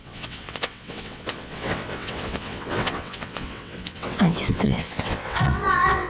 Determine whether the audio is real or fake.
fake